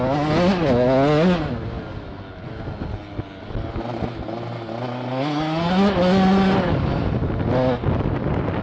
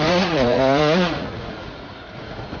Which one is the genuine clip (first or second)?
first